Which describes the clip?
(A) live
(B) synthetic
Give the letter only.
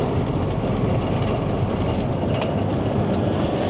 A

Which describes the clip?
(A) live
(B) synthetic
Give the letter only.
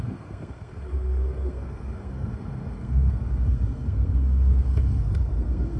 B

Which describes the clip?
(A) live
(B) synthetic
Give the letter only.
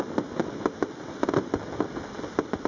A